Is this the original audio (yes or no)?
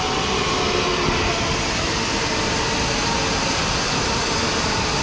yes